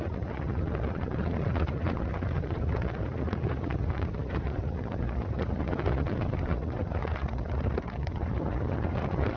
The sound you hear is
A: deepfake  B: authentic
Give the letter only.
A